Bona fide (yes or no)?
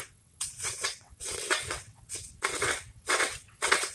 no